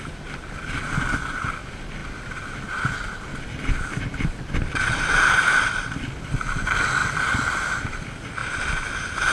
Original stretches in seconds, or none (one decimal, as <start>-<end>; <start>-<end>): 0.0-9.3